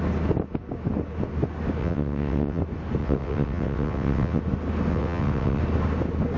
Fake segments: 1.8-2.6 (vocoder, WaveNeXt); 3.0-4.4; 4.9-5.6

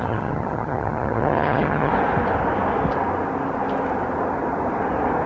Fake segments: 0.0-1.9 (vocoder, HiFi-GAN)

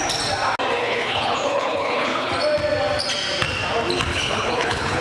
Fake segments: 0.8-2.3 (codec, HILCodec); 4.1-5.0

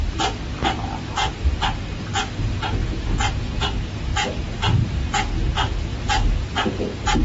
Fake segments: 2.8-3.5 (vocoder, Vocos)